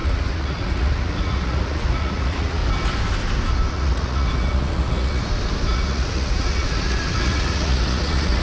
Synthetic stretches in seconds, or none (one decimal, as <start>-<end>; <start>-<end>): 0.0-2.6; 3.7-5.2; 5.7-8.4

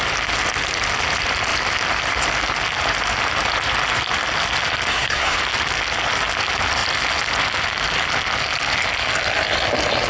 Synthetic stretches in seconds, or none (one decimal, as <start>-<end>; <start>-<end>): 4.9-5.4

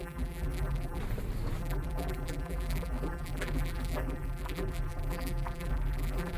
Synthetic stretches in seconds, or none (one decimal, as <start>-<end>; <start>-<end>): 0.0-1.0; 1.6-6.4

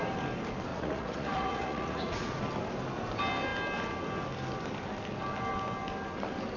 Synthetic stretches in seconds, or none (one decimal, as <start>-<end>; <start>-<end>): 0.7-2.4